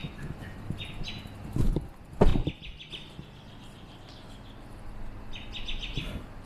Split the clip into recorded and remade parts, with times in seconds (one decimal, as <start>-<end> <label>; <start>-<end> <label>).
0.0-2.3 recorded; 2.3-2.9 remade; 2.9-6.5 recorded